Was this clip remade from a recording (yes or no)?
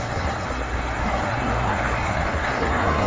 yes